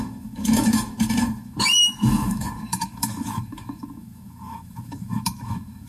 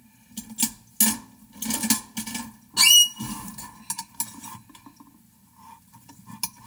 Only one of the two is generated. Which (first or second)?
first